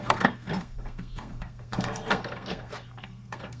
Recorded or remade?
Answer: remade